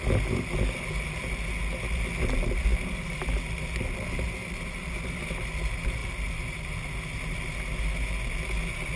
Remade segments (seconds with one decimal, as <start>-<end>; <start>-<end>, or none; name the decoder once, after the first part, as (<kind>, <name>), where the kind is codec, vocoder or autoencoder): none